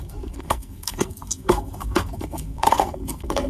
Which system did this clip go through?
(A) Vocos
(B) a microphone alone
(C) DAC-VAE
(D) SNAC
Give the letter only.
D